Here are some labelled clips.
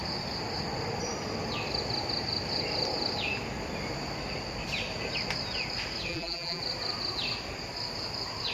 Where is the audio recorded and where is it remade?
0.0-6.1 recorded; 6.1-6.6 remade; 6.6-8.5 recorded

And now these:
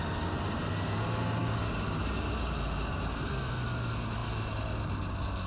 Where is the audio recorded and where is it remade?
0.0-1.4 recorded; 1.4-2.0 remade; 2.0-5.5 recorded

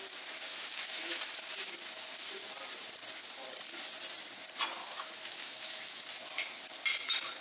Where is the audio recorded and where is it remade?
0.0-0.5 recorded; 0.5-1.2 remade; 1.2-4.8 recorded; 4.8-6.0 remade; 6.0-7.4 recorded

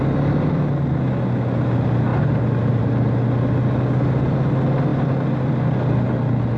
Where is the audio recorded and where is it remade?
0.0-6.6 recorded

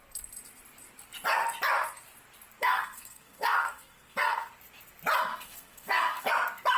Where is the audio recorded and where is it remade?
0.0-2.6 recorded; 2.6-4.5 remade; 4.5-5.3 recorded; 5.3-6.3 remade; 6.3-6.8 recorded

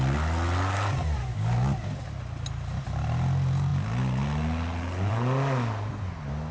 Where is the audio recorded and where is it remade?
0.0-1.2 recorded; 1.2-1.9 remade; 1.9-6.5 recorded

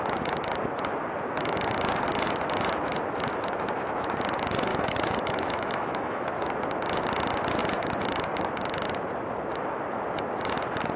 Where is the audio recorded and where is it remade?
0.0-4.7 recorded; 4.7-6.3 remade; 6.3-11.0 recorded

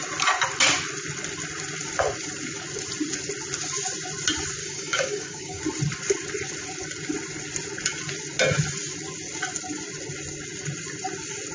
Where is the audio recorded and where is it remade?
0.0-4.6 recorded; 4.6-5.6 remade; 5.6-11.5 recorded